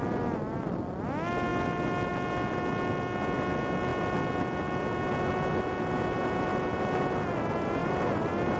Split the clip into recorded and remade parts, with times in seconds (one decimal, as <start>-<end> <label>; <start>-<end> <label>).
0.0-7.8 recorded; 7.8-8.6 remade

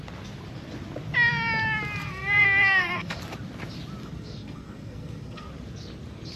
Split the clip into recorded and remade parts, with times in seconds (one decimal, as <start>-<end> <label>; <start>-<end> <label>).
0.0-2.0 recorded; 2.0-3.2 remade; 3.2-4.0 recorded; 4.0-5.5 remade; 5.5-6.4 recorded

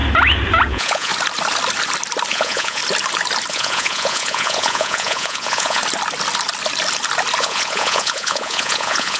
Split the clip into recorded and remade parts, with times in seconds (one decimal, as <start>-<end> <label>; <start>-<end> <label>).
0.0-0.7 recorded; 0.7-1.1 remade; 1.1-2.3 recorded; 2.3-2.8 remade; 2.8-3.5 recorded; 3.5-5.8 remade; 5.8-7.4 recorded; 7.4-9.2 remade